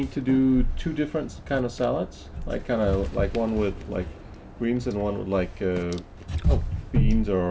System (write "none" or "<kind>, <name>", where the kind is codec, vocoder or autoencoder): none